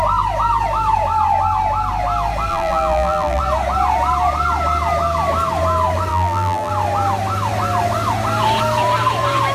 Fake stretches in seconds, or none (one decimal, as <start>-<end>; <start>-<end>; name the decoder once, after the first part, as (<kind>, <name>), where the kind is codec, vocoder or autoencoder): 2.5-3.4 (vocoder, BigVGAN v2); 6.1-6.7